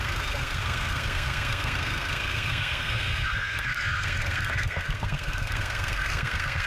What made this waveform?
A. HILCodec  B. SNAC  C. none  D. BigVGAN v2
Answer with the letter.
B